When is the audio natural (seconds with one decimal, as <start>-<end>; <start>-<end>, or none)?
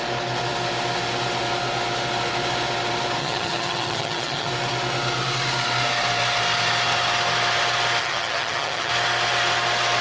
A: 0.0-3.2; 4.5-8.0; 8.9-10.0